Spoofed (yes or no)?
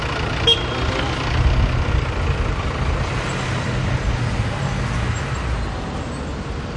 no